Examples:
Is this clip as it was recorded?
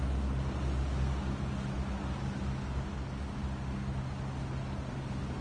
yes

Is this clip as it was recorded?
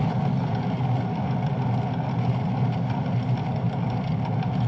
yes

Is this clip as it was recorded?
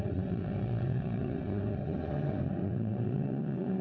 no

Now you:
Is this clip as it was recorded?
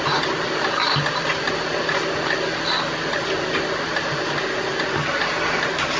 yes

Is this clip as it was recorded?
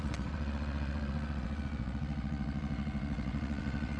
no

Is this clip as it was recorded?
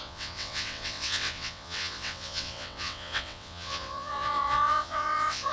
no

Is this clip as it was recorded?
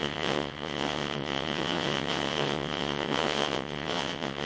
no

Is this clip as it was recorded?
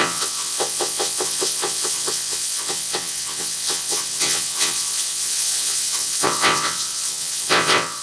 no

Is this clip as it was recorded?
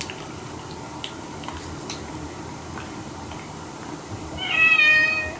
yes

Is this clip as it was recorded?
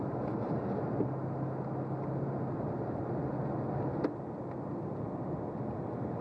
yes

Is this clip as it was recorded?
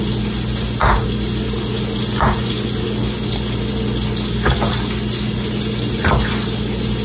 yes